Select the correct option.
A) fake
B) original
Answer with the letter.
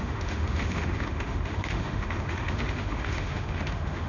A